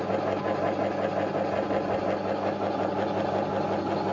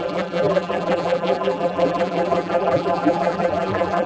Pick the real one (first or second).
first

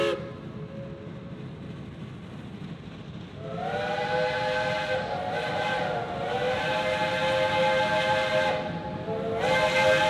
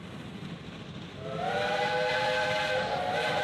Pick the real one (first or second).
first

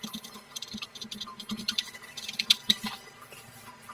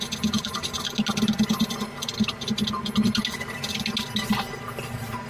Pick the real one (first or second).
second